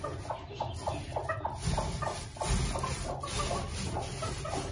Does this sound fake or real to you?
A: real